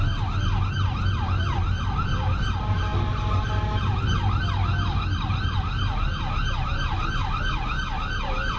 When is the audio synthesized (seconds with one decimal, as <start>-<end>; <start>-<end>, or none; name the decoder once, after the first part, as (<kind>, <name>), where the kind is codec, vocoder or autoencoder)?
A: none

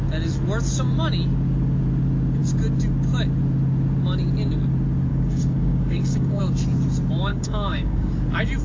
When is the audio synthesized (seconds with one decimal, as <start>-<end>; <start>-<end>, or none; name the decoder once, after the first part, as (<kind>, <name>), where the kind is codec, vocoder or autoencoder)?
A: 5.1-6.4 (codec, DAC); 7.3-8.1

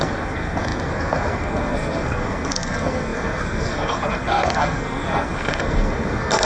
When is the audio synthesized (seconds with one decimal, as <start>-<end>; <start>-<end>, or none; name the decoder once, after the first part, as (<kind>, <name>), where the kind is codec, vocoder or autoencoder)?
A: 0.0-6.5 (codec, SNAC)

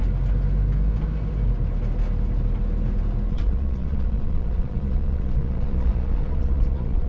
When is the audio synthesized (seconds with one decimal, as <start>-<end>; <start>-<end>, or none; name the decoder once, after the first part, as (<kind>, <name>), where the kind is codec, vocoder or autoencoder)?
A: 3.3-7.1 (vocoder, Vocos)

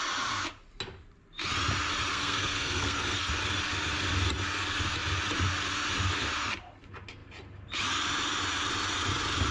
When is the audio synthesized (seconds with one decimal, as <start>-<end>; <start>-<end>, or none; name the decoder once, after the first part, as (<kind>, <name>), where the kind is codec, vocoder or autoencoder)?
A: 2.1-3.3 (codec, SNAC)

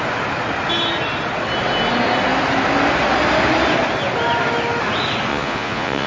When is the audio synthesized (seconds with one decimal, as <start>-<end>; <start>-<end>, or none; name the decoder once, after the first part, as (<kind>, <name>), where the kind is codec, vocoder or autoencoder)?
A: 5.3-6.1 (vocoder, Vocos)

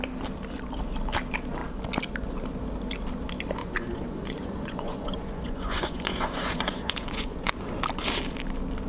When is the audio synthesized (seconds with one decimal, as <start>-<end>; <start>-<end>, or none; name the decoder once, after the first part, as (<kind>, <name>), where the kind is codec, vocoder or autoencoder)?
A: 3.6-7.6 (vocoder, Vocos)